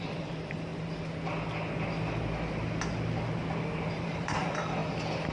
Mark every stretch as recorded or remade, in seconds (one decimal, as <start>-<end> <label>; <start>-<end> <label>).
0.0-0.7 remade; 0.7-3.9 recorded; 3.9-4.8 remade; 4.8-5.3 recorded